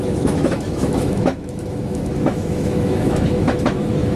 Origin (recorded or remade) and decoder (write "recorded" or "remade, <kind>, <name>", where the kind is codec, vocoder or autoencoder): remade, autoencoder, DAC-VAE